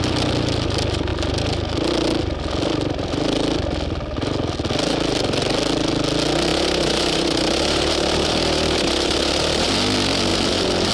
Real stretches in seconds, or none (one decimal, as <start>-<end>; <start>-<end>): 0.0-6.5; 9.7-10.3